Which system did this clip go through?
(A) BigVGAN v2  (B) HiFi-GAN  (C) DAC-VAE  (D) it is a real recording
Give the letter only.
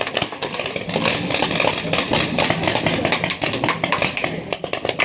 D